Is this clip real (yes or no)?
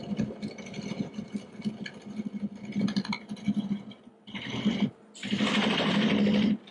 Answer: yes